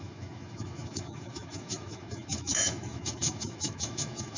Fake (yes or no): yes